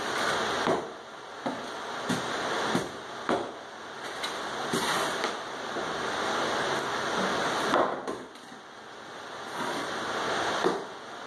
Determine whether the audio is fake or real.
real